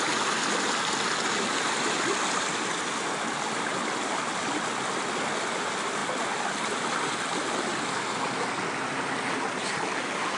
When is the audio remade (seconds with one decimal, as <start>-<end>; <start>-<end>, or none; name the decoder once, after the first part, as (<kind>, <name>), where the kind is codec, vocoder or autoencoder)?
none